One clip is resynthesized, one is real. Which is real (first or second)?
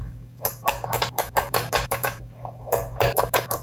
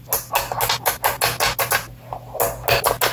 second